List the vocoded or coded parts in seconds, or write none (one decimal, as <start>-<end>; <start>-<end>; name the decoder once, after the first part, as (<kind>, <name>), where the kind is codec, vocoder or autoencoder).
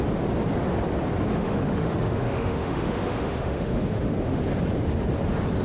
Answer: 1.3-4.4 (autoencoder, DAC-VAE)